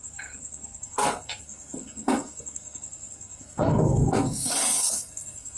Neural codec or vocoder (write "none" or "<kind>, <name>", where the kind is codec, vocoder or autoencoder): codec, SNAC